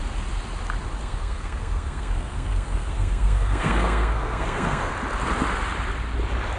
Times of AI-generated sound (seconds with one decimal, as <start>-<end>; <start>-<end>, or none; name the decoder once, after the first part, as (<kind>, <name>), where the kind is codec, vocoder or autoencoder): 1.0-4.9 (codec, SNAC)